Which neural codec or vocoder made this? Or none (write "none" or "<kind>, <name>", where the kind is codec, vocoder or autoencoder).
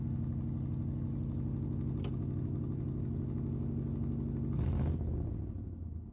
none